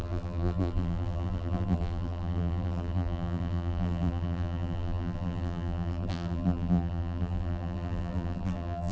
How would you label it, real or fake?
fake